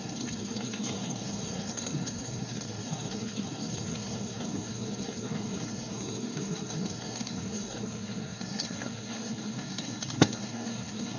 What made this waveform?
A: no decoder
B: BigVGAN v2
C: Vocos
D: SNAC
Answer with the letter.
D